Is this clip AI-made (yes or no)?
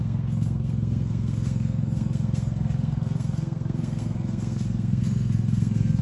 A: yes